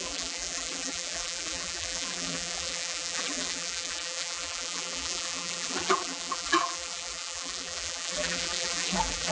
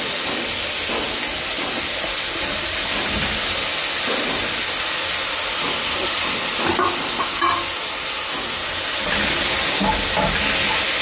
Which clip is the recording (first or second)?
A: second